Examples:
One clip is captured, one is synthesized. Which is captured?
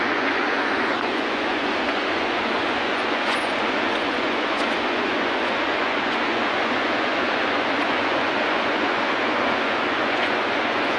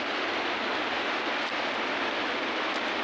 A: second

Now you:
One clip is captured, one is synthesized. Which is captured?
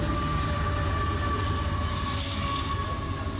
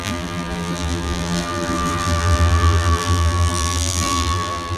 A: first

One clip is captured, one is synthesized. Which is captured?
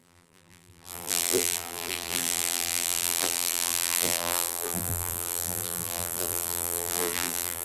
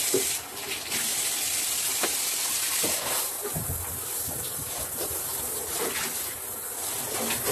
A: second